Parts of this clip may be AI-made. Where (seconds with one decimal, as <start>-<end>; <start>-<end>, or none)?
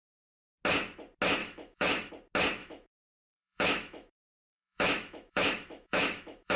1.4-2.1; 2.6-6.6